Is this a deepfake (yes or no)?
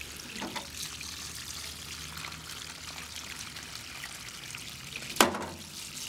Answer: no